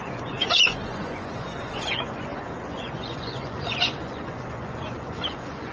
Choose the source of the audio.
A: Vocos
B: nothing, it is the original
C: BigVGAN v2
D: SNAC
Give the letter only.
A